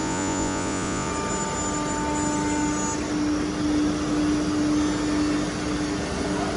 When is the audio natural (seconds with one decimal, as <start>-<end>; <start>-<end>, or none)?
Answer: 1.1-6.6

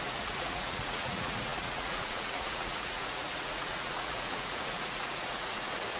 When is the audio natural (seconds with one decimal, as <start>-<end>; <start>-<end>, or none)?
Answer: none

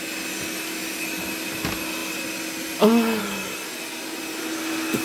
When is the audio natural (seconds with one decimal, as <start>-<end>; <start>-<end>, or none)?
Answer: 0.0-5.0